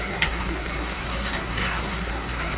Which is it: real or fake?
fake